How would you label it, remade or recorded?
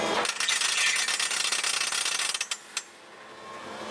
recorded